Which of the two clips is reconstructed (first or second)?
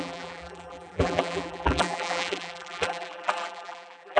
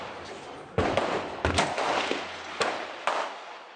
first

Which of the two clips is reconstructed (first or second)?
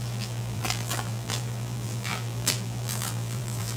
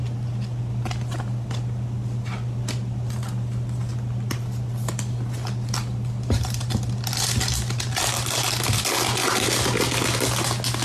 first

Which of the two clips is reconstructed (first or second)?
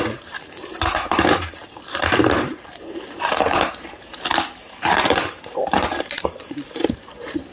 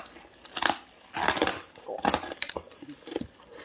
first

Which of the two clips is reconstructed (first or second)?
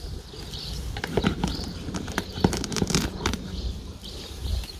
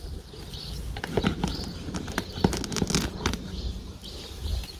first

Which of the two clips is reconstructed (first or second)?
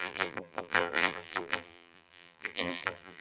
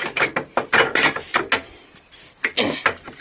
first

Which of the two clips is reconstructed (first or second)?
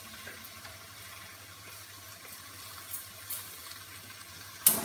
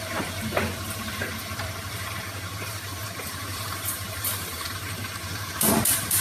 second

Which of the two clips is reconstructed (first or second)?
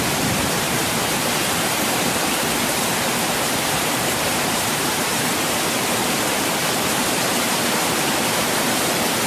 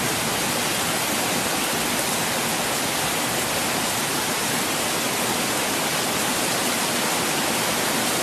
first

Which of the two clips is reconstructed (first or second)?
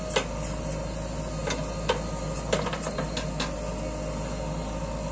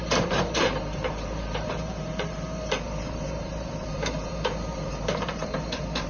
second